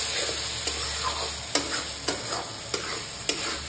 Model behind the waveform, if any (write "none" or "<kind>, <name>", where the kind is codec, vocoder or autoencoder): none